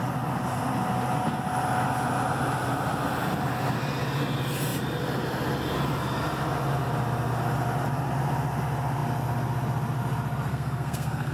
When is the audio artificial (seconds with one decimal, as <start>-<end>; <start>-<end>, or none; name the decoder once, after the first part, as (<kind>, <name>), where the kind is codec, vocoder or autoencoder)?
10.5-11.3 (codec, SNAC)